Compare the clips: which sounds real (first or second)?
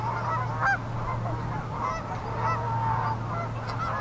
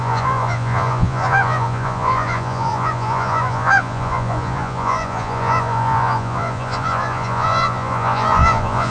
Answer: first